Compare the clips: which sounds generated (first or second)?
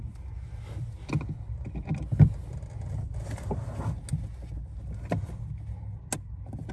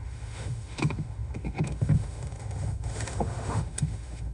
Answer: second